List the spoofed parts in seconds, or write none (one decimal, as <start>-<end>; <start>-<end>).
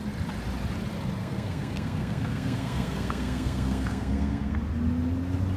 1.2-4.6